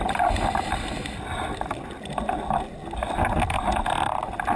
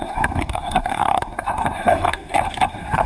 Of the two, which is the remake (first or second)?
second